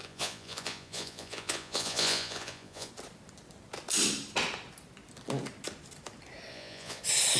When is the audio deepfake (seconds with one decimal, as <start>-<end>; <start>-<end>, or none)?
0.0-2.9; 6.5-7.0